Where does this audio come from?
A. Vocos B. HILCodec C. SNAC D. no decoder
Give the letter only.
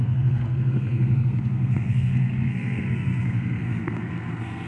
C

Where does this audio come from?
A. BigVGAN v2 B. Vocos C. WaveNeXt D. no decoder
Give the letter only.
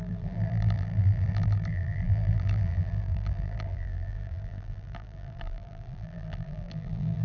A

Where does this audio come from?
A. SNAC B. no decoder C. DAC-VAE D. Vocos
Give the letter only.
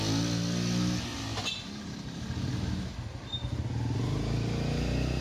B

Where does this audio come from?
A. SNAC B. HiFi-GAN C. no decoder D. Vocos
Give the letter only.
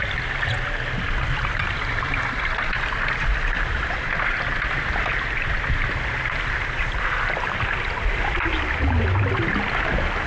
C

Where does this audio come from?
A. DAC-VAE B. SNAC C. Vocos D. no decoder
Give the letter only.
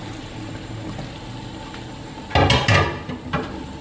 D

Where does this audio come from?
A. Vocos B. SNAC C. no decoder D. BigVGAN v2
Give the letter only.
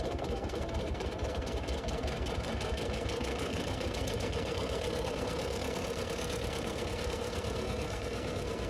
B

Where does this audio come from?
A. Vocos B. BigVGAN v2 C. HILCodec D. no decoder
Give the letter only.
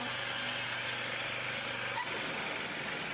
D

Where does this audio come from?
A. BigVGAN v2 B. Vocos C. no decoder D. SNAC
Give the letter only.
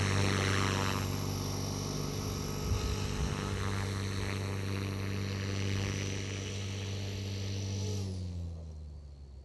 C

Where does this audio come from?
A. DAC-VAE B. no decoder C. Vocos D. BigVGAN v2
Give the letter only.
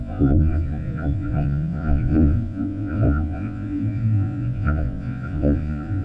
C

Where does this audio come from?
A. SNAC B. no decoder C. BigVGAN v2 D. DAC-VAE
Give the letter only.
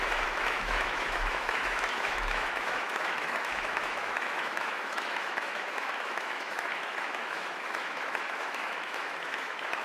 D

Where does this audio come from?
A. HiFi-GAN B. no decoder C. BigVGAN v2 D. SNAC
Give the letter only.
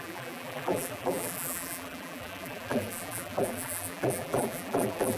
C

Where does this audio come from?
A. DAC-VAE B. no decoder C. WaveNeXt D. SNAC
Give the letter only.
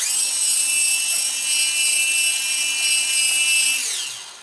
B